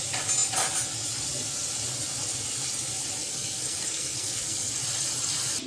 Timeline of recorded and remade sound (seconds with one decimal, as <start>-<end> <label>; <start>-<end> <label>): 0.0-3.2 recorded; 3.2-4.7 remade; 4.7-5.7 recorded